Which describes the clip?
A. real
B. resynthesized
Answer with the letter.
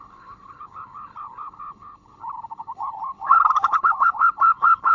B